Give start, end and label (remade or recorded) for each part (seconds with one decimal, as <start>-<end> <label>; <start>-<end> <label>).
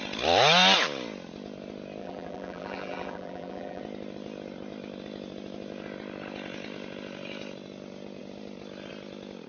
0.0-2.0 recorded; 2.0-3.8 remade; 3.8-9.5 recorded